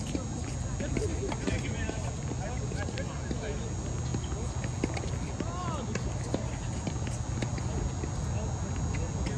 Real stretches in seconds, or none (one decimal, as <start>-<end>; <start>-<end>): 0.0-9.4